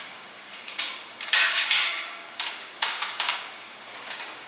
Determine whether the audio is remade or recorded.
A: remade